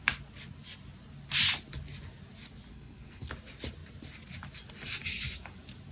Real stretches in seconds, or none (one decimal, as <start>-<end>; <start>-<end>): 0.0-2.7; 3.3-5.9